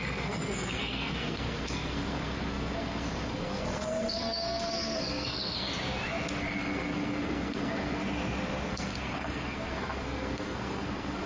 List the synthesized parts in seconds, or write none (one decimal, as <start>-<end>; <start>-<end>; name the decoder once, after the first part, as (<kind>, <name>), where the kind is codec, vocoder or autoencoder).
0.0-5.7 (codec, SNAC); 6.4-8.0; 8.7-11.3